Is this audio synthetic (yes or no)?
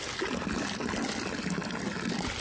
no